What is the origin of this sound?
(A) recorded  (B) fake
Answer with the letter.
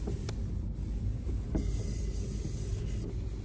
A